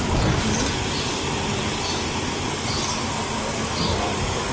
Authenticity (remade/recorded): recorded